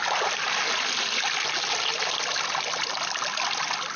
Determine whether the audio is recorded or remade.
recorded